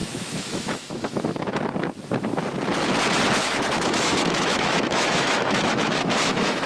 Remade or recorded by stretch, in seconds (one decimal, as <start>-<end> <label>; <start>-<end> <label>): 0.0-1.6 remade; 1.6-3.4 recorded; 3.4-6.7 remade